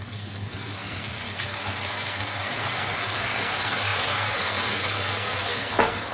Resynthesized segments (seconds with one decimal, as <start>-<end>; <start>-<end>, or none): 0.0-6.1